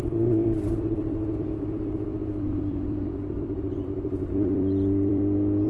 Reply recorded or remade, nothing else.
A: remade